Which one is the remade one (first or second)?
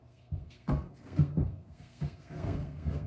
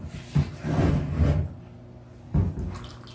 first